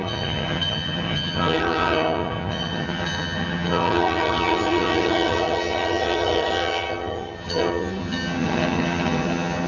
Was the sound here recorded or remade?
remade